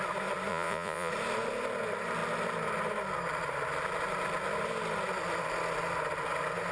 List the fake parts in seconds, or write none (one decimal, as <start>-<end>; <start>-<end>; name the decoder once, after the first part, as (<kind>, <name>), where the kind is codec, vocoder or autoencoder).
0.5-1.1 (vocoder, Vocos)